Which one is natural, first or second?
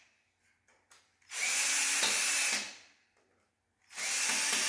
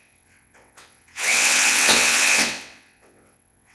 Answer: first